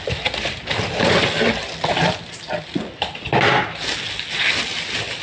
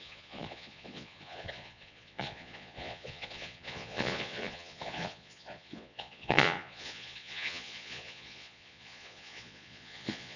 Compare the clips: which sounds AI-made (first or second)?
second